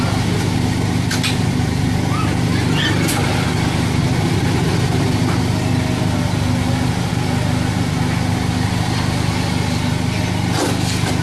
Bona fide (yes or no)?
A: yes